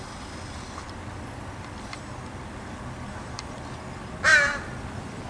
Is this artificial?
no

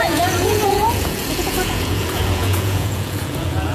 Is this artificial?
yes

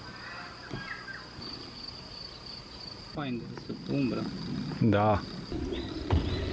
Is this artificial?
no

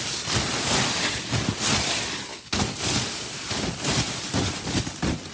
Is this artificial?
no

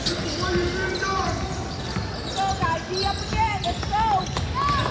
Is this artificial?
no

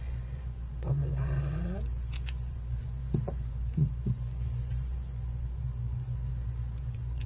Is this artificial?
yes